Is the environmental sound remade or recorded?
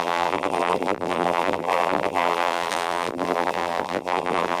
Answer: remade